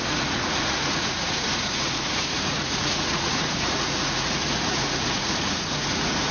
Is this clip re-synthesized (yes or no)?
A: yes